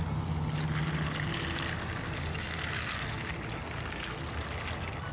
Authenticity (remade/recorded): recorded